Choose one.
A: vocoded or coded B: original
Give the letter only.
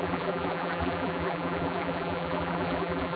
A